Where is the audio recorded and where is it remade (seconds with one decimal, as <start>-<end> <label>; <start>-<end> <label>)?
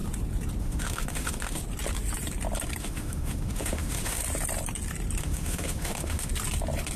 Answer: 0.0-0.6 recorded; 0.6-1.6 remade; 1.6-2.8 recorded; 2.8-4.2 remade; 4.2-5.2 recorded; 5.2-6.3 remade; 6.3-7.0 recorded